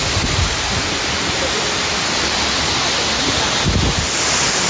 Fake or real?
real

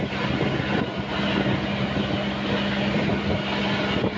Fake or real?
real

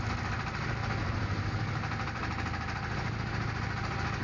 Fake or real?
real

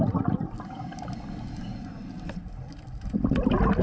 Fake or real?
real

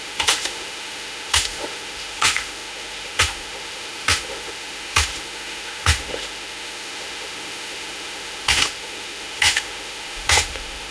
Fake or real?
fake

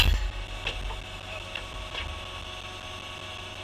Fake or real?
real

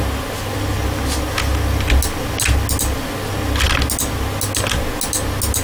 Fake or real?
real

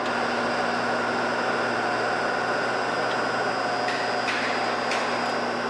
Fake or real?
real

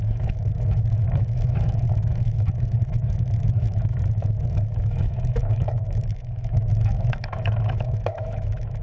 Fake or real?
fake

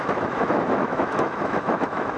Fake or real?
fake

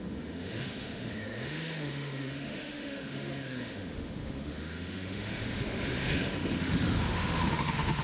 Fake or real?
fake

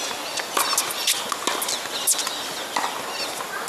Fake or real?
real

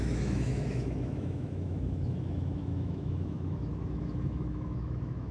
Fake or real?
fake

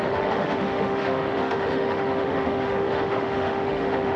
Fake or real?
fake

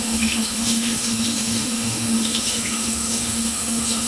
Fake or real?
fake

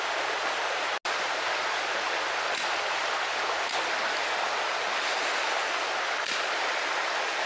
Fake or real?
real